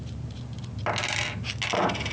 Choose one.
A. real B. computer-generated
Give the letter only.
A